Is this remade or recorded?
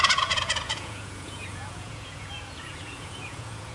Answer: remade